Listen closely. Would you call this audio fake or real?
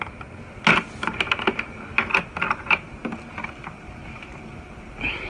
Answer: real